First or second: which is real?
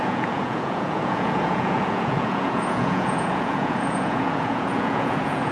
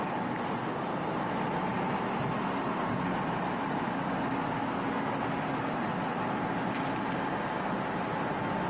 second